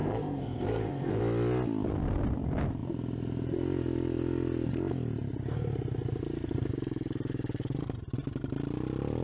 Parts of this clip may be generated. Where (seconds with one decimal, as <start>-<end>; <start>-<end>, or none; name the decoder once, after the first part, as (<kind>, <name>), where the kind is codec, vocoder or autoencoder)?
0.0-1.2 (codec, SNAC)